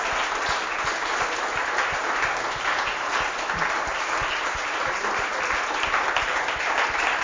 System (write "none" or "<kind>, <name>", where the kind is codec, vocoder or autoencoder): none